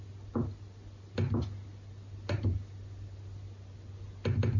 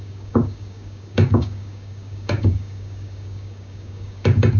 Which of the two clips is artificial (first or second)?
second